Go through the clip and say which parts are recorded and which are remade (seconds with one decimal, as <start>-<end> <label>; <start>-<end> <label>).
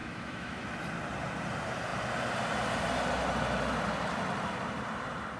0.0-0.6 remade; 0.6-5.4 recorded